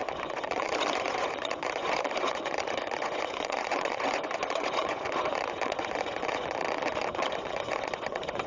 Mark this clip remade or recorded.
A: remade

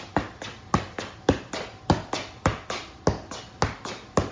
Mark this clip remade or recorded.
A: recorded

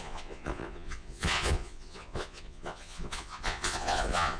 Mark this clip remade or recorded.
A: remade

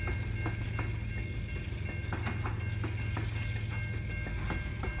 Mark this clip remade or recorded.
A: recorded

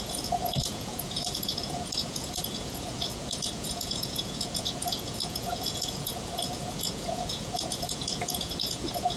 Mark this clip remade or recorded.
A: remade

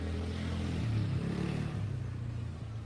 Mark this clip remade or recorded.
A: recorded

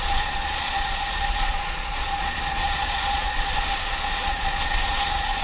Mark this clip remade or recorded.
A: remade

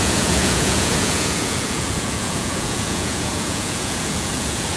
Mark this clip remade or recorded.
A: remade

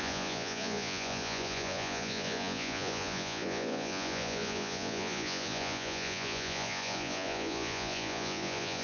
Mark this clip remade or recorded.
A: remade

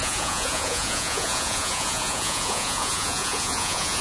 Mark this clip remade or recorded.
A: remade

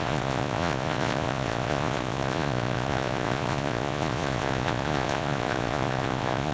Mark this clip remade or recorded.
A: remade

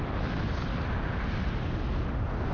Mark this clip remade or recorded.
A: recorded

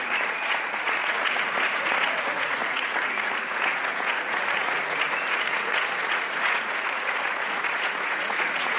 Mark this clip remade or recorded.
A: remade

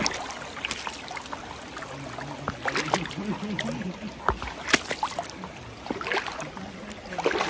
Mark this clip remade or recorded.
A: recorded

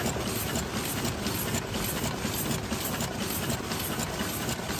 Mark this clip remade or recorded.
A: recorded